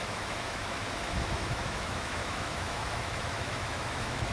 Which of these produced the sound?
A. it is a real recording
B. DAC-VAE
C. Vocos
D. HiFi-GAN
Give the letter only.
B